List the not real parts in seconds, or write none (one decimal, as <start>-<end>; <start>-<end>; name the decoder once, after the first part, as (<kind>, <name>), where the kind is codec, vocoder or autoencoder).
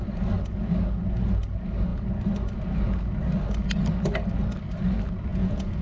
5.3-5.8 (vocoder, Vocos)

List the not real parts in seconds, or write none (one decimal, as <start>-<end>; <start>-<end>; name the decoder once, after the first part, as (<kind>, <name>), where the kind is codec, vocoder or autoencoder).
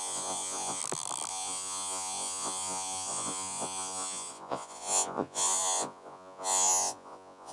0.0-0.8 (vocoder, Vocos); 1.3-7.5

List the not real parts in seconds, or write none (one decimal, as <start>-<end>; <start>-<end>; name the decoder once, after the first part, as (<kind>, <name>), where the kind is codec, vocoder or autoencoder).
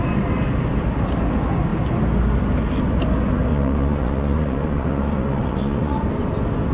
3.5-6.1 (vocoder, Vocos)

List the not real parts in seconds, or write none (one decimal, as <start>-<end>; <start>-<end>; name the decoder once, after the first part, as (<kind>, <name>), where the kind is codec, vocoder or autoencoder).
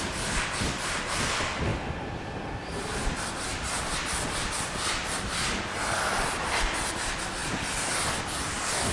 none